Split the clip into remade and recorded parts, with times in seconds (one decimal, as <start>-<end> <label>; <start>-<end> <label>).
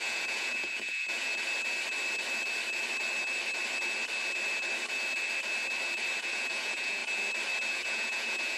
0.0-1.3 remade; 1.3-6.2 recorded; 6.2-7.0 remade; 7.0-7.7 recorded; 7.7-8.6 remade